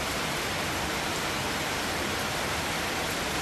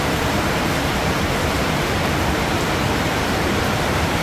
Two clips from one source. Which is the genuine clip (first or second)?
first